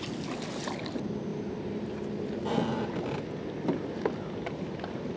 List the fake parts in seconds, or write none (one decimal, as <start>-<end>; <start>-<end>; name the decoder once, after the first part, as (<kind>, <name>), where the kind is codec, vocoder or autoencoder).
1.3-2.0 (vocoder, BigVGAN v2)